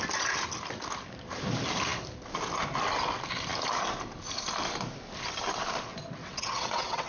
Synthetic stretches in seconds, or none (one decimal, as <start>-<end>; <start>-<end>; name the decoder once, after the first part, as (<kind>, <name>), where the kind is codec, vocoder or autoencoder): 6.2-7.1 (vocoder, WaveNeXt)